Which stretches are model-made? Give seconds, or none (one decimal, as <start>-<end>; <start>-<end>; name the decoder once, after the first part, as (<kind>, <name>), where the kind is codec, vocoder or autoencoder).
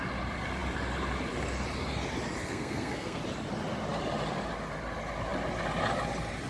2.4-3.2 (codec, SNAC)